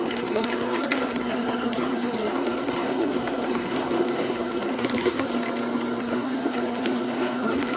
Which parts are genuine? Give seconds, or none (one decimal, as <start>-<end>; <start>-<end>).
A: 5.3-6.0